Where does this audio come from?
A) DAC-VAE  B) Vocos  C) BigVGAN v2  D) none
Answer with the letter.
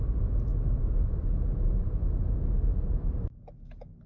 D